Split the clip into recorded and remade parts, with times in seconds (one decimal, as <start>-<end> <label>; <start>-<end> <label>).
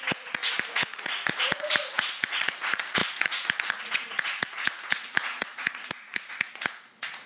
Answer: 0.0-7.3 remade